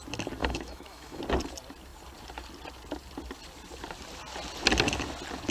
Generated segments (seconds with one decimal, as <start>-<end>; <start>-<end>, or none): 0.4-1.2

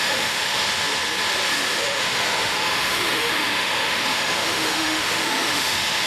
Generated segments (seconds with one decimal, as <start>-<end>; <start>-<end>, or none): 0.0-0.6; 1.5-6.1